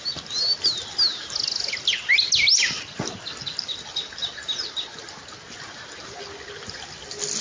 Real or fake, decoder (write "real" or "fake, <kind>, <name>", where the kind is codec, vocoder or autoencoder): real